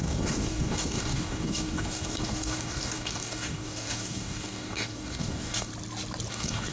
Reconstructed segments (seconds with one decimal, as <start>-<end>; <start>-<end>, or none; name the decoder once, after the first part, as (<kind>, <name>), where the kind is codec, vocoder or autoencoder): 0.0-5.7 (codec, DAC); 6.3-6.7